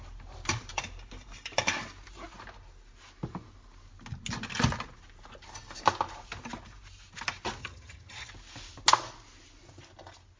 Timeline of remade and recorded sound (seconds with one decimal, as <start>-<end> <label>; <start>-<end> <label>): 0.0-7.6 recorded; 7.6-8.3 remade; 8.3-10.4 recorded